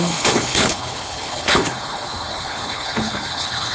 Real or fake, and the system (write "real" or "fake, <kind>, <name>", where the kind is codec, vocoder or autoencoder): fake, codec, HILCodec